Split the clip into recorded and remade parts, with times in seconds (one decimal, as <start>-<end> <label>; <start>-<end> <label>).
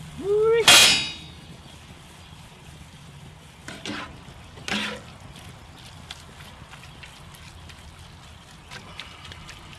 0.0-9.8 recorded